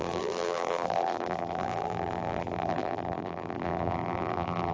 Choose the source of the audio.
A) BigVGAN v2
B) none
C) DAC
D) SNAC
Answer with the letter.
A